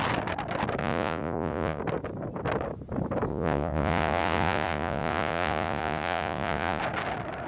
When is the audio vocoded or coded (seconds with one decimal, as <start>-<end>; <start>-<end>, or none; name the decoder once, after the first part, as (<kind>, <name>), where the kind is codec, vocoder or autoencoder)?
0.8-1.8 (vocoder, Vocos); 3.3-6.8